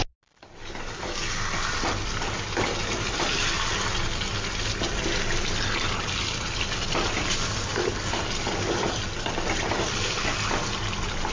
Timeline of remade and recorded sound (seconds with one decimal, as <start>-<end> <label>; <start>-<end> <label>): 0.0-11.3 recorded

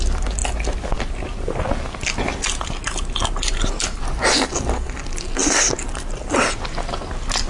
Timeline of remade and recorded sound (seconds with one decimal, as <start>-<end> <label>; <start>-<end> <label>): 0.0-7.5 recorded

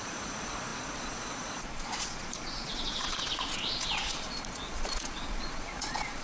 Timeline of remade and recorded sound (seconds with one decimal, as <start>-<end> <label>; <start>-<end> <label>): 0.0-6.2 remade

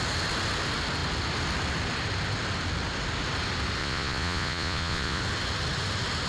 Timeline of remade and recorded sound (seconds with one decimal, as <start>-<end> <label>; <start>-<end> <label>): 0.0-3.8 recorded; 3.8-5.2 remade; 5.2-6.3 recorded

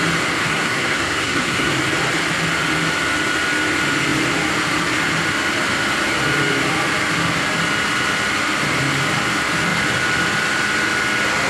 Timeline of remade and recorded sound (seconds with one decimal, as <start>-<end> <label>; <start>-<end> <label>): 0.0-0.4 recorded; 0.4-1.7 remade; 1.7-11.5 recorded

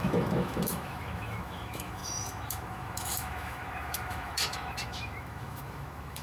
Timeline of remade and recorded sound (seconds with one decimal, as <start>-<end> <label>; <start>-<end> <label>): 0.0-6.2 remade